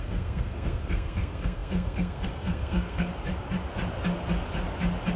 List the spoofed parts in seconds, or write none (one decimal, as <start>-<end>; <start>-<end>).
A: 0.0-3.1